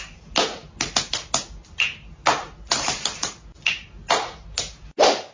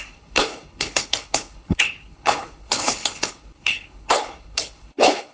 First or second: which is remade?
second